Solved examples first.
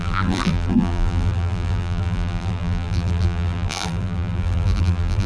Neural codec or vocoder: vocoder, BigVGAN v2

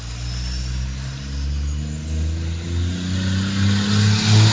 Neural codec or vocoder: none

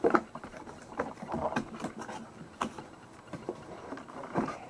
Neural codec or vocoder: none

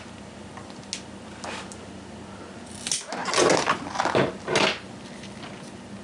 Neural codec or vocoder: none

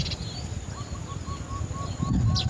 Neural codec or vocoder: none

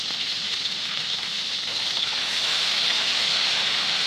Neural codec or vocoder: autoencoder, DAC-VAE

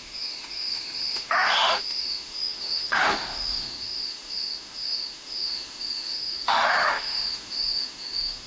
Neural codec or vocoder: autoencoder, DAC-VAE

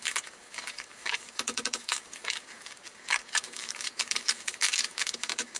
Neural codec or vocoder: codec, DAC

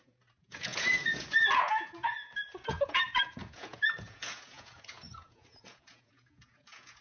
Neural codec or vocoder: vocoder, Vocos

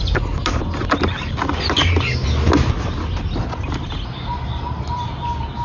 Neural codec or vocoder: none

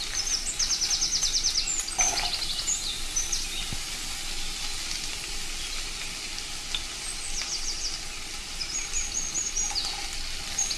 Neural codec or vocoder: none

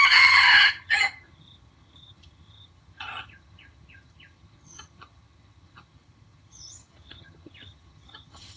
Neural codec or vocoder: vocoder, HiFi-GAN